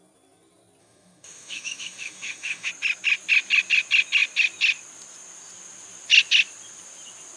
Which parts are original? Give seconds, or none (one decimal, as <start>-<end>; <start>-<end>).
0.0-0.8; 2.7-7.4